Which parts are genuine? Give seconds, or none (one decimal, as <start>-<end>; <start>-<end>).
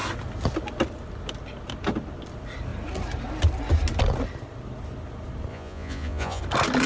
0.0-5.5; 6.4-6.9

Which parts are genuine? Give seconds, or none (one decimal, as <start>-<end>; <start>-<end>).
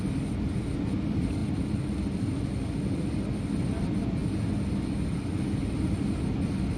0.0-6.8